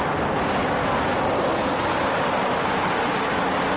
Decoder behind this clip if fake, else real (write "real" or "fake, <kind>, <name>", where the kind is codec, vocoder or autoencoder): real